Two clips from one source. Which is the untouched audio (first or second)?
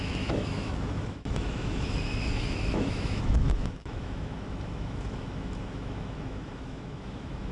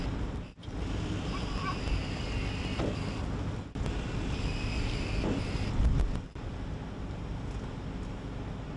second